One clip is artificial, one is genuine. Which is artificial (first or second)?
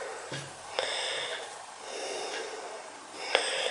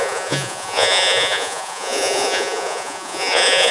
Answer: second